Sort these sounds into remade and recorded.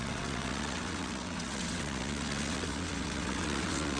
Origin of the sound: remade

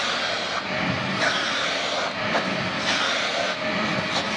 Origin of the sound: recorded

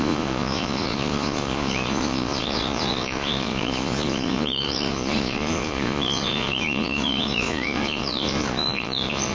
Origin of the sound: remade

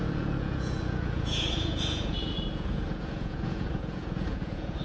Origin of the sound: remade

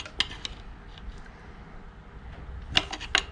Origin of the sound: recorded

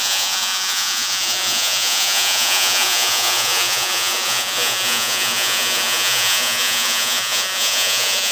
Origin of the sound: remade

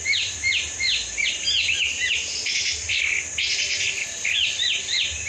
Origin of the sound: remade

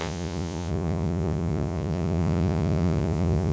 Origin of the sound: remade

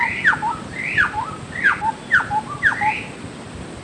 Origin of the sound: recorded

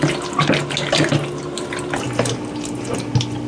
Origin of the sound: recorded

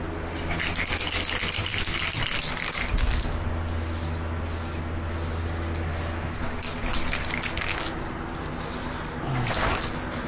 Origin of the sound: recorded